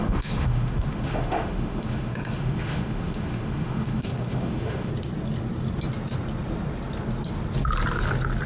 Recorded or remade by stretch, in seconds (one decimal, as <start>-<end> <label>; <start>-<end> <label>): 0.0-4.9 remade; 4.9-8.5 recorded